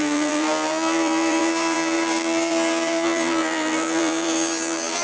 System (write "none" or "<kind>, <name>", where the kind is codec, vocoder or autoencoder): vocoder, BigVGAN v2